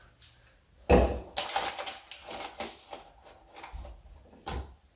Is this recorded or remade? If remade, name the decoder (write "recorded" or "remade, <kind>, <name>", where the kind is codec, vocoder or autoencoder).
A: recorded